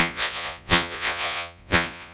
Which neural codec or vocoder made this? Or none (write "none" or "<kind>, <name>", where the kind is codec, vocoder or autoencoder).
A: vocoder, Vocos